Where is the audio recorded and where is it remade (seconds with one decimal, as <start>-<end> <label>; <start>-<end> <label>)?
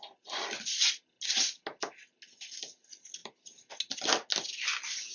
0.0-5.1 recorded